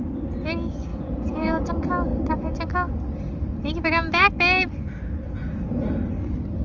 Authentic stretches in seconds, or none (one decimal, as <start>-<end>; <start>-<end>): 0.0-0.9; 1.7-6.6